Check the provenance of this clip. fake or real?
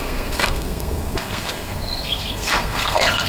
fake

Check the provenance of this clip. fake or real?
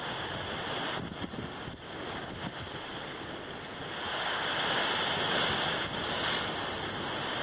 real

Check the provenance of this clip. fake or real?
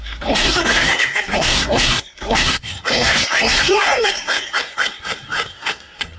fake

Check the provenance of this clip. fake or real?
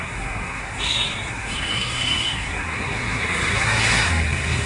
fake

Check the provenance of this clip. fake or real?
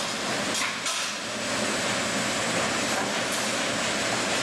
real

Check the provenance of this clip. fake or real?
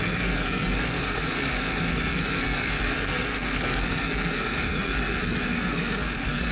fake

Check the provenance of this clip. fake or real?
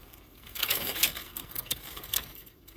fake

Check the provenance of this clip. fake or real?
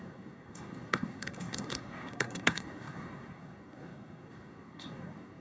fake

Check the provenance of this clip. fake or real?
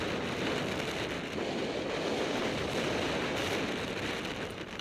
real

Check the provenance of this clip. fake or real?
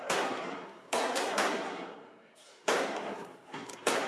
fake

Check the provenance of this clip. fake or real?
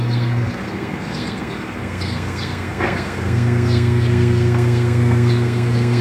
fake